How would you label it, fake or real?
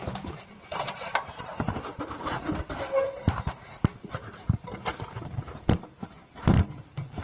fake